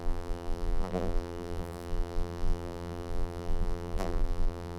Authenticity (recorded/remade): remade